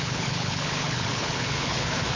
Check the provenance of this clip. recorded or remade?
remade